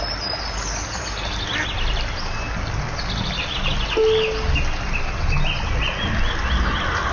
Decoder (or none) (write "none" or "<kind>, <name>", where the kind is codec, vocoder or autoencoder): none